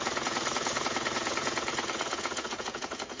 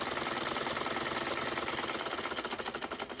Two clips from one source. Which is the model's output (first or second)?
first